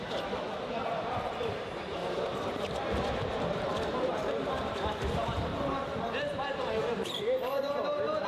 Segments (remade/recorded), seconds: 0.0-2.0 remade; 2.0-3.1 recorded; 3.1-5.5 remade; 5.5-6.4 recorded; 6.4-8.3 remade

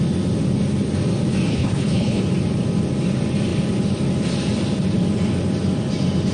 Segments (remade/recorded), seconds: 0.0-1.5 recorded; 1.5-2.2 remade; 2.2-6.3 recorded

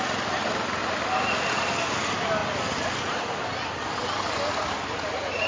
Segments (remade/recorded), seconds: 0.0-5.5 recorded

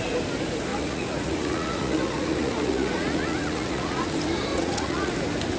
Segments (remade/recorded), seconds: 0.0-0.7 recorded; 0.7-4.1 remade; 4.1-4.5 recorded; 4.5-5.1 remade; 5.1-5.6 recorded

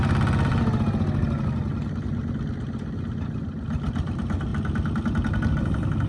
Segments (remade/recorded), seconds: 0.0-6.1 recorded

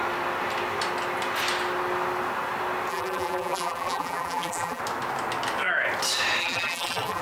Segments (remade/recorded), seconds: 0.0-2.9 recorded; 2.9-4.8 remade; 4.8-6.4 recorded; 6.4-7.2 remade

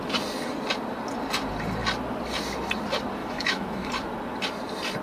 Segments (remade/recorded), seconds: 0.0-3.2 recorded; 3.2-3.9 remade; 3.9-5.0 recorded